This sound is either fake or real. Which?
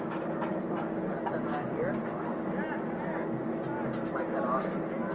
real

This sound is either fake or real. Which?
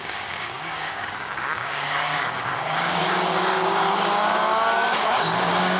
fake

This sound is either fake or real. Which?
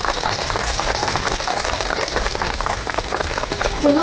fake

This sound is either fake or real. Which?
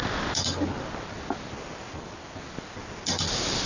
real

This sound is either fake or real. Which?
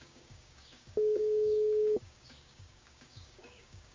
fake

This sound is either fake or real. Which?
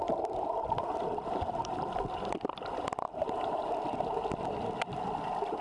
real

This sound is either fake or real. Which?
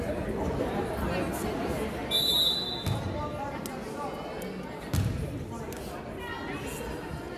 real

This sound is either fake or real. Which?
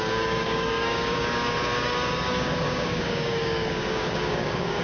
fake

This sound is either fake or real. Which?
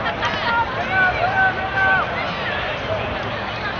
real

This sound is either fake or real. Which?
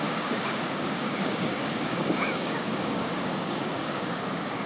fake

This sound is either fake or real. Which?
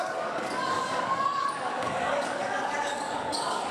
fake